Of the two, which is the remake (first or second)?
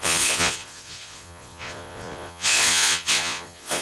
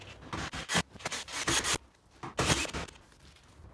first